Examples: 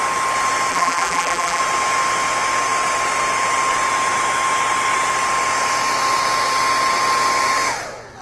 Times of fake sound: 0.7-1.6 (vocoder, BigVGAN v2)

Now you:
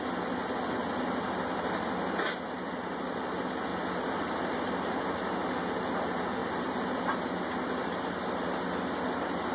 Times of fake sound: 6.4-7.2 (vocoder, BigVGAN v2)

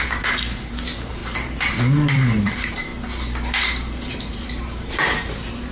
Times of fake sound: 0.0-2.9 (vocoder, BigVGAN v2); 4.1-5.7

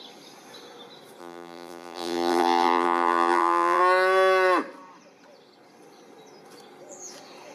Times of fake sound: 1.2-3.8 (vocoder, BigVGAN v2)

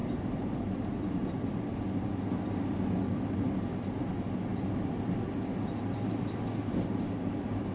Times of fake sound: 0.0-1.0 (vocoder, BigVGAN v2); 4.5-5.1

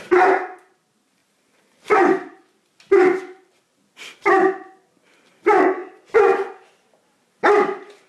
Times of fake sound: 1.2-2.8 (vocoder, BigVGAN v2)